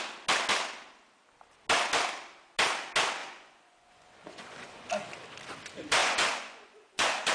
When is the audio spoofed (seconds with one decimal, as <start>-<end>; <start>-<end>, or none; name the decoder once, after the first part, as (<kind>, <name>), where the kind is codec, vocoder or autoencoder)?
3.2-4.9 (vocoder, Vocos); 6.0-7.3